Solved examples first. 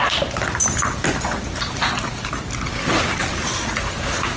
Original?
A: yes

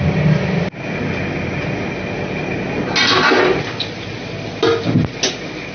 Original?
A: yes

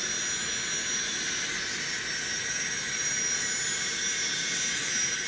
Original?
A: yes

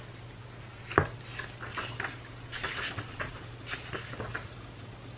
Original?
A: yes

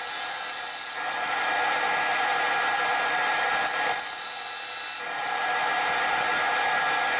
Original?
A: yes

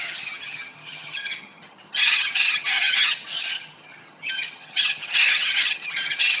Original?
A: no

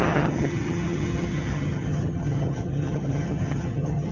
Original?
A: no